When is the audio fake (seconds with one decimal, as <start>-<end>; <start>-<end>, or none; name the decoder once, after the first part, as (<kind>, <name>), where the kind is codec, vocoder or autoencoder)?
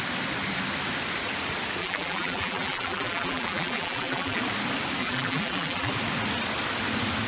1.8-4.4 (vocoder, BigVGAN v2); 5.0-5.9